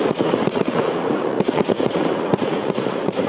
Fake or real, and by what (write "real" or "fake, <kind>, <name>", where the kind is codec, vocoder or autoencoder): fake, vocoder, Vocos